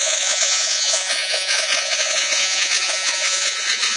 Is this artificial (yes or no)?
yes